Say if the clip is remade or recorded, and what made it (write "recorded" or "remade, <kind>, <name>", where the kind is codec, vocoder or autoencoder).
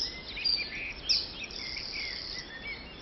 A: recorded